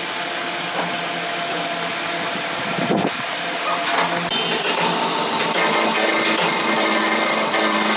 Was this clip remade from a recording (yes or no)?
no